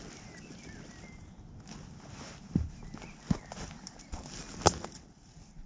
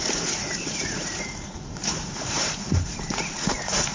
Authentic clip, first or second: first